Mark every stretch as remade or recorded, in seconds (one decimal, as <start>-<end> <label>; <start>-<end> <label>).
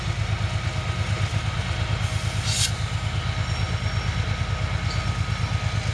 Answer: 0.0-5.9 recorded